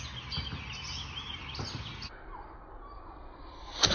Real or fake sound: real